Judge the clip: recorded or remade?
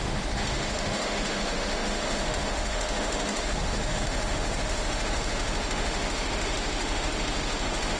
remade